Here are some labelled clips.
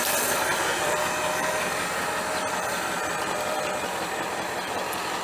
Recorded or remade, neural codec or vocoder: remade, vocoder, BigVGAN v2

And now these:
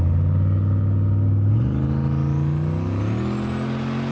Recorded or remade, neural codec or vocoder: recorded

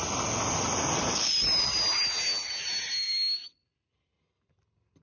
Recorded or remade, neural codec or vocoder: recorded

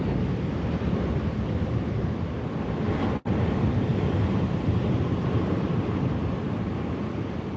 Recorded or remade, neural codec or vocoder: remade, vocoder, BigVGAN v2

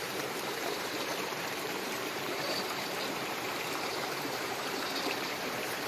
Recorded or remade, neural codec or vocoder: remade, vocoder, BigVGAN v2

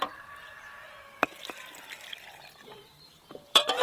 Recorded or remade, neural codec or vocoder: remade, vocoder, BigVGAN v2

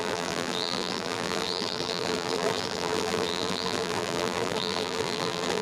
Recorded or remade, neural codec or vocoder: remade, vocoder, BigVGAN v2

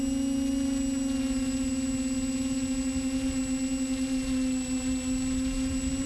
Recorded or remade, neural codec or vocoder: recorded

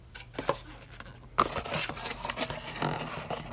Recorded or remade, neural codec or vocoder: recorded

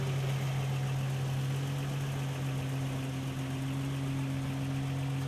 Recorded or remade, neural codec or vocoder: recorded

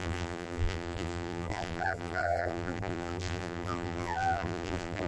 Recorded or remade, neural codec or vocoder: remade, vocoder, BigVGAN v2